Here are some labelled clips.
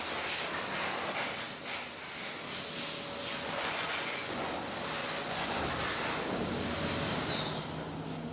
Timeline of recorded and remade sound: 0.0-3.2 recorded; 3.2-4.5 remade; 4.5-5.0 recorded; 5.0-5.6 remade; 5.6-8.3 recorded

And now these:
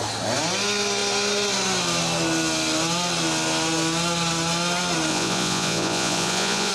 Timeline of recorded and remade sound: 0.0-5.1 recorded; 5.1-6.7 remade

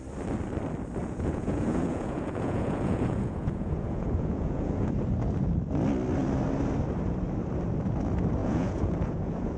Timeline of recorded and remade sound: 0.0-1.0 recorded; 1.0-4.9 remade; 4.9-8.4 recorded; 8.4-9.6 remade

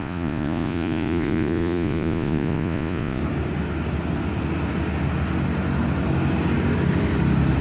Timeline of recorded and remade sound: 0.0-3.2 remade; 3.2-7.6 recorded

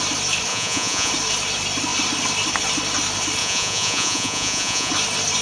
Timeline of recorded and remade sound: 0.0-0.5 recorded; 0.5-1.1 remade; 1.1-3.4 recorded; 3.4-4.9 remade; 4.9-5.4 recorded